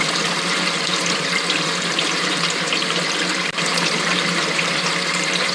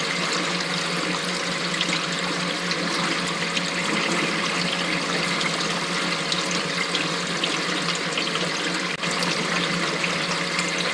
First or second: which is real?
second